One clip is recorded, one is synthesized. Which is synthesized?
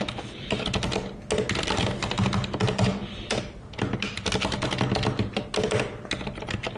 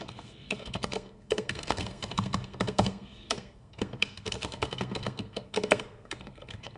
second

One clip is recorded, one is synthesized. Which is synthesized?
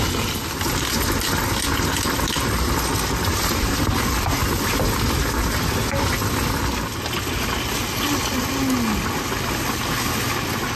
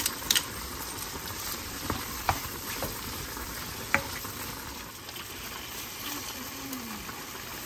second